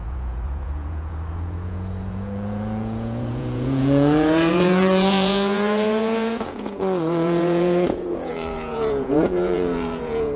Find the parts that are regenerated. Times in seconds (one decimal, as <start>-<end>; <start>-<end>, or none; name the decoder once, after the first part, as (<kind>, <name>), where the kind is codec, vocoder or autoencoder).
0.0-10.4 (vocoder, Vocos)

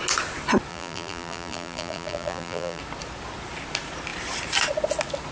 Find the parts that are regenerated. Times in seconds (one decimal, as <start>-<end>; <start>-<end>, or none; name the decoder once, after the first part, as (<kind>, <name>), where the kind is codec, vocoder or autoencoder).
0.7-2.8 (vocoder, BigVGAN v2)

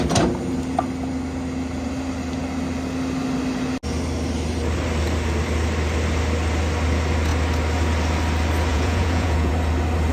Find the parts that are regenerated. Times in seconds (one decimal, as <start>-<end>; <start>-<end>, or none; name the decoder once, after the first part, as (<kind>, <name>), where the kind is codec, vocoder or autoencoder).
8.7-9.5 (vocoder, Vocos)

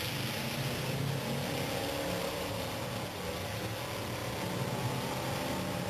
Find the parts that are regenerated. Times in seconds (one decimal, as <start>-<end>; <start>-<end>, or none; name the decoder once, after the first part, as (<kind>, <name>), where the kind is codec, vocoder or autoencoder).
none

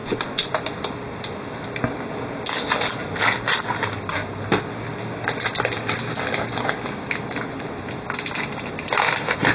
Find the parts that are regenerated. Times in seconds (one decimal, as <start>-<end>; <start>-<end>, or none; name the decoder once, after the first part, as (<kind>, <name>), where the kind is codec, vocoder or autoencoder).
0.0-0.5 (vocoder, Vocos)